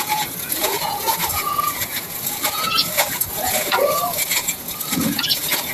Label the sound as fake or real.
fake